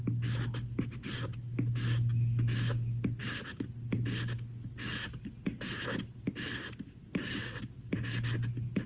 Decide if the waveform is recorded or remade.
recorded